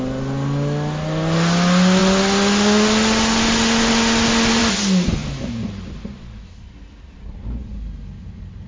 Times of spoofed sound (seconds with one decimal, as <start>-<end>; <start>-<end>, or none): none